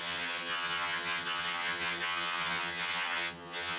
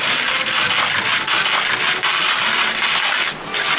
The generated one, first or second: first